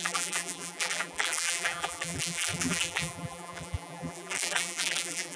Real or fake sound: fake